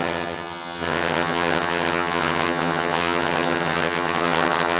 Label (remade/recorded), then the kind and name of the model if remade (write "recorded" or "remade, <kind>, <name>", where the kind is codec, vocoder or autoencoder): remade, vocoder, HiFi-GAN